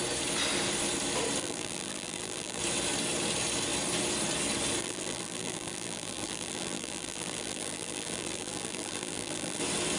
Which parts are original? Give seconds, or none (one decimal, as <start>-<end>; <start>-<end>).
0.0-1.4; 2.6-4.8; 9.6-10.0